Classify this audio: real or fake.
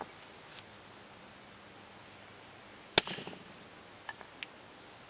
real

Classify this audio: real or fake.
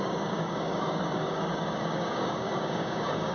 fake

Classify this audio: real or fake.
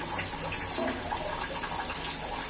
real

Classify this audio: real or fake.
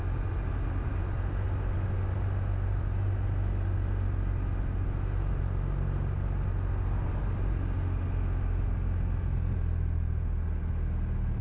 real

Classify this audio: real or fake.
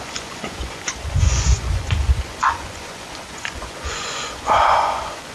fake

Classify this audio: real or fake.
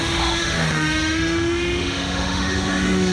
fake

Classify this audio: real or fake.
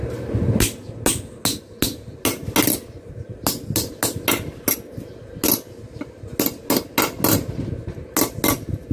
real